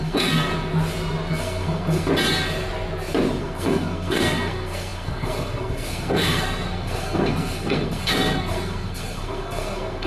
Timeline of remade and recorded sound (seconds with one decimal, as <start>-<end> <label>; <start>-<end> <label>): 0.0-0.5 remade; 0.5-1.3 recorded; 1.3-2.1 remade; 2.1-3.4 recorded; 3.4-10.1 remade